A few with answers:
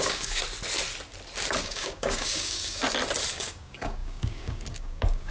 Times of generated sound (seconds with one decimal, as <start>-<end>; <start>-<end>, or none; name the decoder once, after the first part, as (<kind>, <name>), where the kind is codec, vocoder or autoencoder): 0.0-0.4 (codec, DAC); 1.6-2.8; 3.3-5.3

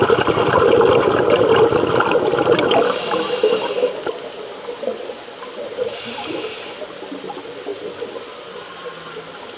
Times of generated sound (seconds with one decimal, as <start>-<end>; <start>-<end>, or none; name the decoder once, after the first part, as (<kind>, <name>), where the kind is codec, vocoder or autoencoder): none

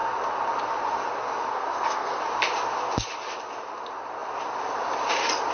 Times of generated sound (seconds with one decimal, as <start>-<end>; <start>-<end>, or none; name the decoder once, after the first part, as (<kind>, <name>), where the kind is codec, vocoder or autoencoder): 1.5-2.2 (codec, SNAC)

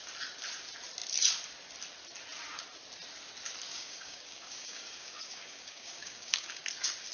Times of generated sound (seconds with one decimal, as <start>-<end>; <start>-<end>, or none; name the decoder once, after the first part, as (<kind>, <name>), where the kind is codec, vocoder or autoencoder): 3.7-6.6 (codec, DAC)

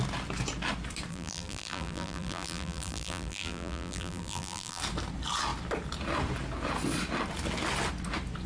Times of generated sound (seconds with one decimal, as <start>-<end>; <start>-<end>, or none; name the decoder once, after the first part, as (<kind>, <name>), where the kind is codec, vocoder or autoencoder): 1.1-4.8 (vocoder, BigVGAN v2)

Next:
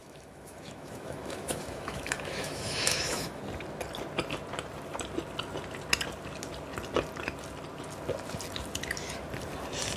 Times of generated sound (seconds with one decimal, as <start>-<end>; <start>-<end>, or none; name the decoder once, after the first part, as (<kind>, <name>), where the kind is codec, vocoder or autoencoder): 0.0-3.4 (autoencoder, DAC-VAE)

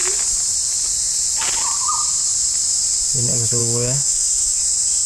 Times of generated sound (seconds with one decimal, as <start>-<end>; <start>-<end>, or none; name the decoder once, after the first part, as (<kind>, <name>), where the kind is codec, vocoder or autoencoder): 3.6-4.6 (autoencoder, DAC-VAE)